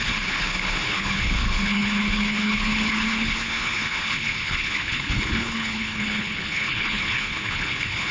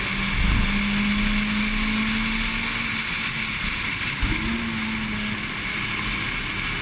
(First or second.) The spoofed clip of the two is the first